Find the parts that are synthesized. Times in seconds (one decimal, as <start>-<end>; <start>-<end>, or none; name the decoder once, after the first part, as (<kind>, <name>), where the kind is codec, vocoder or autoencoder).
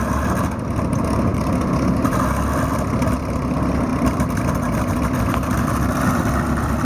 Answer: 3.9-6.3 (vocoder, BigVGAN v2)